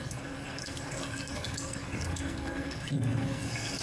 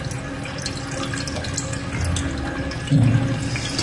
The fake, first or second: first